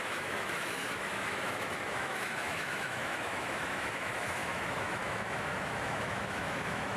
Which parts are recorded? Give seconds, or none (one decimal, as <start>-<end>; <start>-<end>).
none